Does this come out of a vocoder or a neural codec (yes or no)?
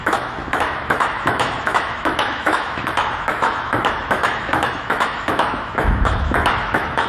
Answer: yes